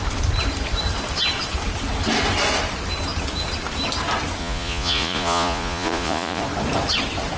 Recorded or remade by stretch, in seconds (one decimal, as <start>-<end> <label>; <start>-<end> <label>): 0.0-4.4 recorded; 4.4-6.4 remade; 6.4-7.4 recorded